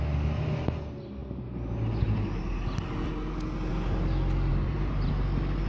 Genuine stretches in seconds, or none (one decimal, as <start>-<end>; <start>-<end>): 0.0-4.5; 5.1-5.7